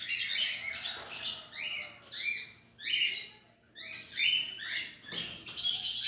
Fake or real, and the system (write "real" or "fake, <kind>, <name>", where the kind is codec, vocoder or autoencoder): real